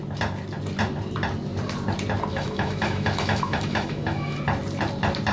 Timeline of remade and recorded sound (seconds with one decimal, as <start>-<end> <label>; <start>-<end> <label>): 0.0-2.3 recorded; 2.3-4.4 remade; 4.4-5.3 recorded